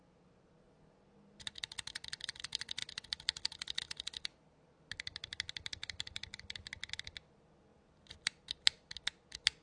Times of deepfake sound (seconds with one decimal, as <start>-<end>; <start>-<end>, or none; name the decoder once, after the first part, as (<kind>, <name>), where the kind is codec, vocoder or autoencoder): none